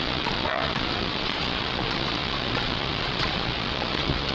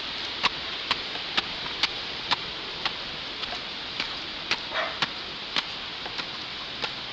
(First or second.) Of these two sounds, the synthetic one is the first